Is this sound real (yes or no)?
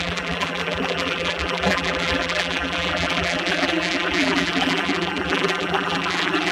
no